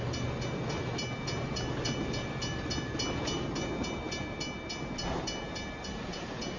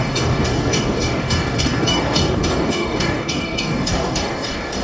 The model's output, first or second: second